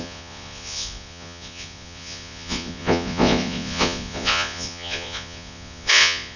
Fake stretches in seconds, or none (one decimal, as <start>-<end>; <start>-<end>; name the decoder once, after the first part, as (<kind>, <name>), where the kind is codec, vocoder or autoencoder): 0.0-6.4 (vocoder, Vocos)